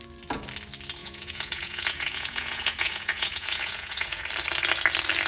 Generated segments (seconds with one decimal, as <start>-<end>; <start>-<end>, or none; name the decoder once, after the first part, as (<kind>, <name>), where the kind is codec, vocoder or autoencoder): 1.0-4.2 (vocoder, Vocos)